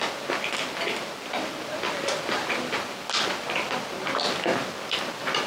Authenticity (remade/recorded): recorded